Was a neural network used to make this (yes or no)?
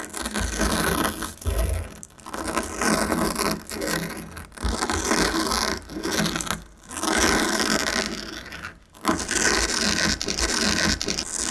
no